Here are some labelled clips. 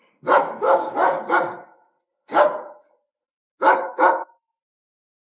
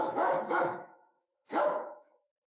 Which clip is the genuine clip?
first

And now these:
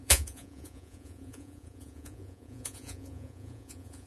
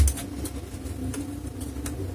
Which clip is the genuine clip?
second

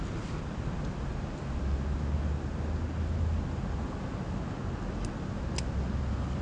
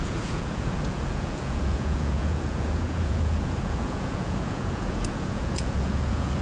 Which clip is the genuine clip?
first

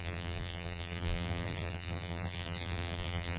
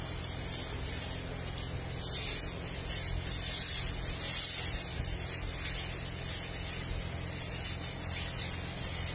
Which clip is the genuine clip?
second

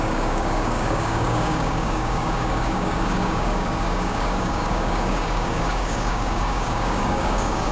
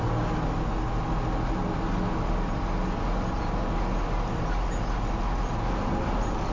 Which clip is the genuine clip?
second